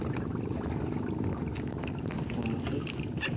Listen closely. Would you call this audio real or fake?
real